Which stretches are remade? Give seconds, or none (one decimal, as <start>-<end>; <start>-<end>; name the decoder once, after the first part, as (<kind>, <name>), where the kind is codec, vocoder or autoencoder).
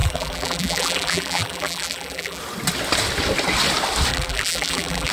0.0-2.4 (vocoder, BigVGAN v2); 4.1-5.1